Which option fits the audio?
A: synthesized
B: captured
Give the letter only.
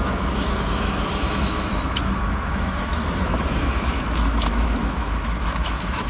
A